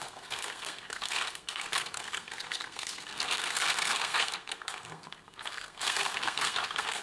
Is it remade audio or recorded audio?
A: remade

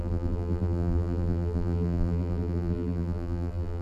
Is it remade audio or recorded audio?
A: remade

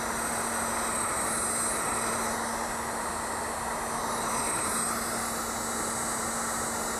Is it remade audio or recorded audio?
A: recorded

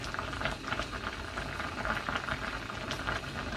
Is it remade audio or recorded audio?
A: recorded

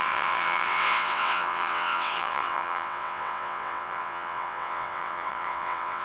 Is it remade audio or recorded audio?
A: remade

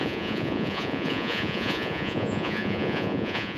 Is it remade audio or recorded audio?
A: remade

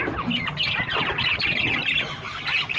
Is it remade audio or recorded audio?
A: recorded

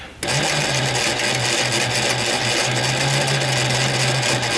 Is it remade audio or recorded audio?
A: recorded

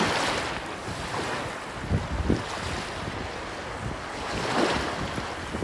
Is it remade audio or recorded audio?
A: recorded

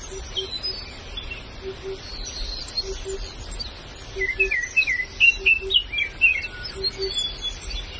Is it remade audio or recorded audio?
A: recorded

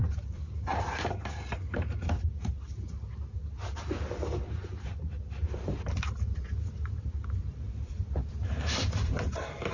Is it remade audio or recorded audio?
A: remade